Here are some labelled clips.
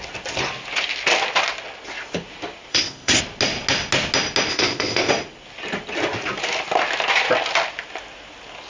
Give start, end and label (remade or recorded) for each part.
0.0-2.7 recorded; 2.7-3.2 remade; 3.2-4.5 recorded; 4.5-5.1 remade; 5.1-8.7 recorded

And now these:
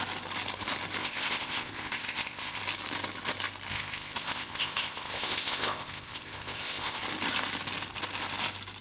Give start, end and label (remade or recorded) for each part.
0.0-1.0 recorded; 1.0-2.6 remade; 2.6-3.7 recorded; 3.7-7.0 remade; 7.0-8.8 recorded

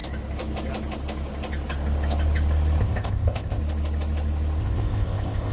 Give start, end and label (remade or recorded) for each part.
0.0-2.8 recorded; 2.8-3.6 remade; 3.6-4.6 recorded; 4.6-5.5 remade

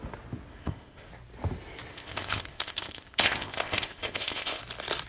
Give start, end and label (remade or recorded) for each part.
0.0-0.5 recorded; 0.5-1.1 remade; 1.1-1.9 recorded; 1.9-4.6 remade; 4.6-5.1 recorded

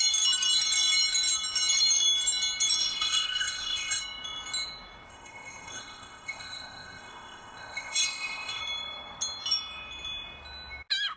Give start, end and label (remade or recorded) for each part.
0.0-2.8 recorded; 2.8-4.0 remade; 4.0-5.1 recorded; 5.1-8.6 remade; 8.6-11.2 recorded